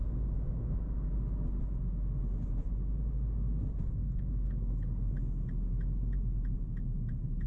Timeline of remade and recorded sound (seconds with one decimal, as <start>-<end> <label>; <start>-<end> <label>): 0.0-1.1 remade; 1.1-3.8 recorded; 3.8-5.1 remade; 5.1-7.5 recorded